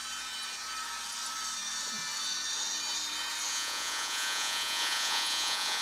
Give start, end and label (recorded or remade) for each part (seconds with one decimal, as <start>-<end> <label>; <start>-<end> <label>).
0.0-3.5 recorded; 3.5-5.8 remade

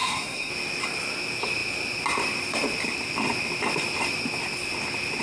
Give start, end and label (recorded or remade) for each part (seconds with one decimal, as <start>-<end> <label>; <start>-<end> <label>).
0.0-0.5 remade; 0.5-5.2 recorded

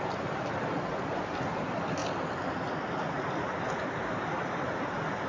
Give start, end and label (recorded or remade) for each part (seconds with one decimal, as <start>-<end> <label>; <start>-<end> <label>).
0.0-5.3 recorded

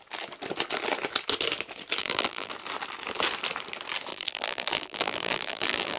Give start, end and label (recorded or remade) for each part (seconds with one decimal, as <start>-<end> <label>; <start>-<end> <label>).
0.0-2.0 recorded; 2.0-2.5 remade; 2.5-4.1 recorded; 4.1-6.0 remade